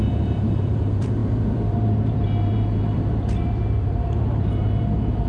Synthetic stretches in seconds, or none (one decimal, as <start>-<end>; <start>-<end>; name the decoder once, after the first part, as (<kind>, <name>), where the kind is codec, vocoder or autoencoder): 0.0-5.3 (vocoder, BigVGAN v2)